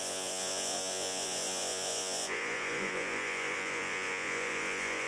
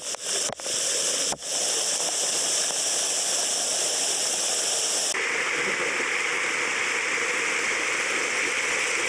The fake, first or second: first